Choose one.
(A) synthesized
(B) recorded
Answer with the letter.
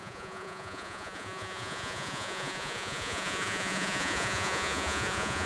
A